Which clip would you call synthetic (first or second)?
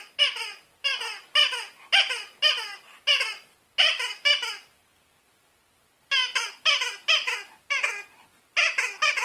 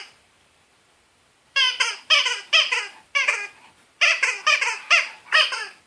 second